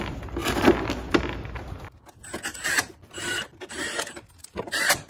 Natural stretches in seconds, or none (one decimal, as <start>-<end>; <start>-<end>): 0.0-2.5